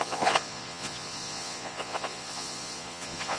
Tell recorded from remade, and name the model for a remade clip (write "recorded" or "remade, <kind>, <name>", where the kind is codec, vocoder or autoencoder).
remade, vocoder, Vocos